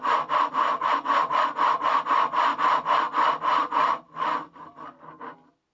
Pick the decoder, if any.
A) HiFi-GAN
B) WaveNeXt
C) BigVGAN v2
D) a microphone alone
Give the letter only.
D